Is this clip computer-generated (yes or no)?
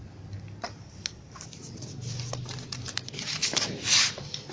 no